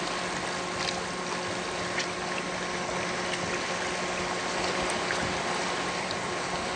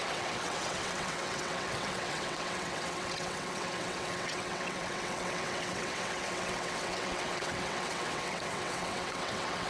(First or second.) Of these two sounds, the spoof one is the second